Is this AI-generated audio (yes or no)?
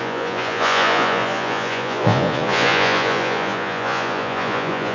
yes